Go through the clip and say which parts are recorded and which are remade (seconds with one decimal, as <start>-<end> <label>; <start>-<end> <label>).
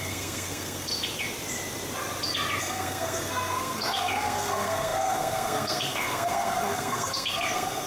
0.0-0.9 remade; 0.9-2.6 recorded; 2.6-7.9 remade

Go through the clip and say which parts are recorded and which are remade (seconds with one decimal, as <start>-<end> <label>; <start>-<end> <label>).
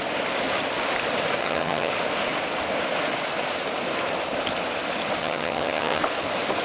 0.0-1.4 recorded; 1.4-1.9 remade; 1.9-5.2 recorded; 5.2-6.0 remade; 6.0-6.6 recorded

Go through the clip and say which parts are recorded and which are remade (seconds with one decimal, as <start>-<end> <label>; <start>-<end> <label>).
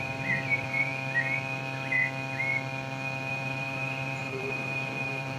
0.0-0.9 remade; 0.9-3.3 recorded; 3.3-5.4 remade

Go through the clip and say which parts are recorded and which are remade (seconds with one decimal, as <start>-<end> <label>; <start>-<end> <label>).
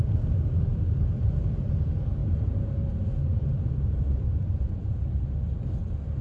0.0-0.7 recorded; 0.7-1.3 remade; 1.3-2.2 recorded; 2.2-2.8 remade; 2.8-3.3 recorded; 3.3-4.6 remade; 4.6-6.2 recorded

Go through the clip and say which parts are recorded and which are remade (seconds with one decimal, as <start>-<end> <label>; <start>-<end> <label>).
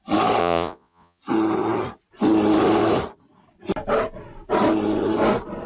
0.0-0.4 recorded; 0.4-1.2 remade; 1.2-5.7 recorded